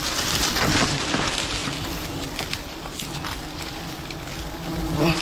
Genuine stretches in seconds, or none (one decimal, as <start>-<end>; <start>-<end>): 0.0-5.2